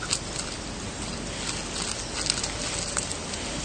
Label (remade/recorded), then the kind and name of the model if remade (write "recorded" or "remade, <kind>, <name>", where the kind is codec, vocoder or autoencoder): recorded